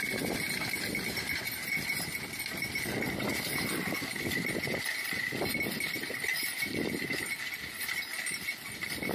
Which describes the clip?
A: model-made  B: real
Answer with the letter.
B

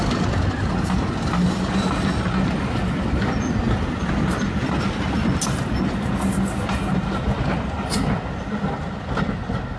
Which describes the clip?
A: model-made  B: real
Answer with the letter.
B